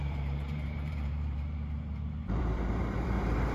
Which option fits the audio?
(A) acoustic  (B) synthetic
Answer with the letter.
B